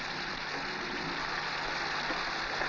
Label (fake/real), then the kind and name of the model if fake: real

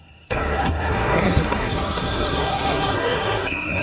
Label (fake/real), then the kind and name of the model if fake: fake, codec, SNAC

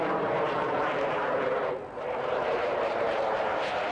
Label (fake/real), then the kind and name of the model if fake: fake, vocoder, BigVGAN v2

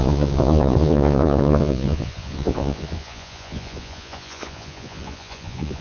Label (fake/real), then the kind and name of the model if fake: fake, vocoder, Vocos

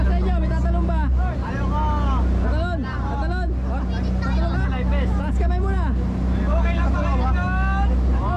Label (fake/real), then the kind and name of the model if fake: real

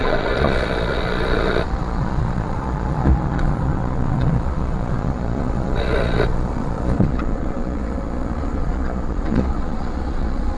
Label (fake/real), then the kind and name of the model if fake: fake, vocoder, Vocos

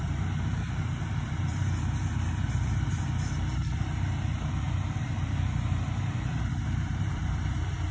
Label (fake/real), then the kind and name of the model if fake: fake, vocoder, BigVGAN v2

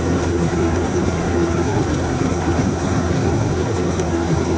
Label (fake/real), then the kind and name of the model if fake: fake, codec, SNAC